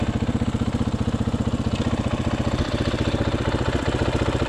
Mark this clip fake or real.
real